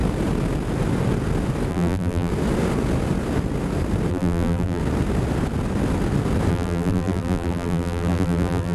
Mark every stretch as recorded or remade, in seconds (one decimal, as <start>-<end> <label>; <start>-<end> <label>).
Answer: 0.0-1.7 recorded; 1.7-2.3 remade; 2.3-4.1 recorded; 4.1-4.8 remade; 4.8-6.5 recorded; 6.5-8.7 remade

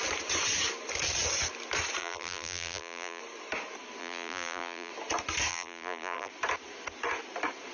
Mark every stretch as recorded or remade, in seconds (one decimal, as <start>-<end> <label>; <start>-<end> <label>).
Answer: 0.0-2.0 recorded; 2.0-3.2 remade; 3.2-4.0 recorded; 4.0-4.9 remade; 4.9-5.5 recorded; 5.5-6.3 remade; 6.3-7.7 recorded

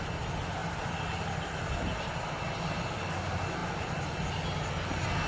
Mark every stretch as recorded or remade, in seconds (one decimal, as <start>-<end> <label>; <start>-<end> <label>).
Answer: 0.0-5.3 recorded